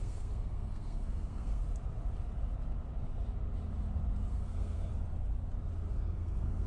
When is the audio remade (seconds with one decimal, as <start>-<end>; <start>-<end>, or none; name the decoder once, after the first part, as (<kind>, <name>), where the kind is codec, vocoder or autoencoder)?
0.0-1.6 (codec, SNAC); 4.3-4.9; 5.9-6.7